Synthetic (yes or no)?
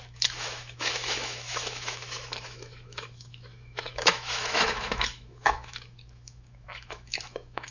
yes